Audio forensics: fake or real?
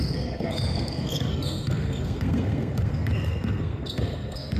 fake